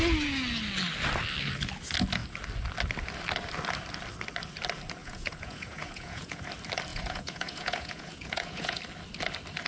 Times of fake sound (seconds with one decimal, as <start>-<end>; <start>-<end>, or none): 5.0-6.4; 6.9-8.8